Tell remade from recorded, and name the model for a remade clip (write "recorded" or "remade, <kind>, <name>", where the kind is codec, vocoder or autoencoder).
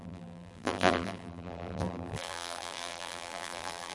remade, vocoder, BigVGAN v2